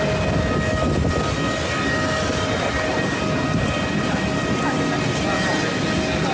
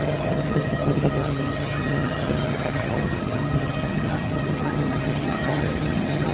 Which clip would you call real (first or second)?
first